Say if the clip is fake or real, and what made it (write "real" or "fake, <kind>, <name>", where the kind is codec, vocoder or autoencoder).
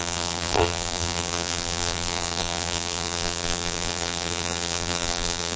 fake, vocoder, BigVGAN v2